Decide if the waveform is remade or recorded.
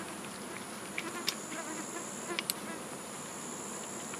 recorded